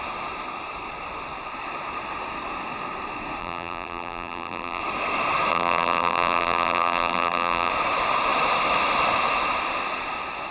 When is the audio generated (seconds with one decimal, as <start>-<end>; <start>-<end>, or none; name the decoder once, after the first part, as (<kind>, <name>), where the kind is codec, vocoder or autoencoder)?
3.4-4.8 (vocoder, BigVGAN v2); 5.5-7.7